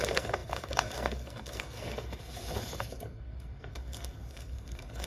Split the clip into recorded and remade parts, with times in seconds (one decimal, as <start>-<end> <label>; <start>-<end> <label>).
0.0-5.1 remade